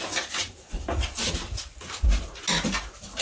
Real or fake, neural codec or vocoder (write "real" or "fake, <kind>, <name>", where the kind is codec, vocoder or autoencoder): real